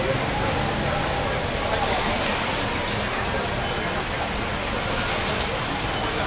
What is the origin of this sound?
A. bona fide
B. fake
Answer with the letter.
A